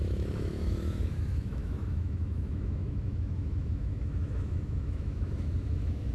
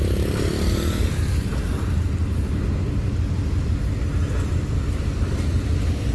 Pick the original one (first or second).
second